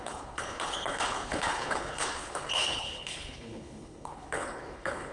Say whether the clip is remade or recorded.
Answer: remade